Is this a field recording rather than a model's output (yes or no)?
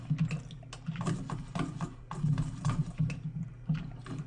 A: yes